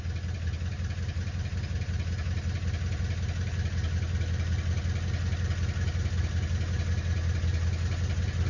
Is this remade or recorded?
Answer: recorded